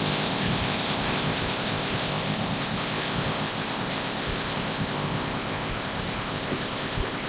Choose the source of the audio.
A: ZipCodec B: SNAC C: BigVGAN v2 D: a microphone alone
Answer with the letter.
A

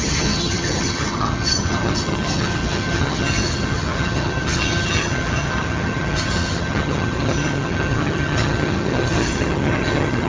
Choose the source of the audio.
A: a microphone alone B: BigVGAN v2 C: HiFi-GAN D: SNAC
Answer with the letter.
C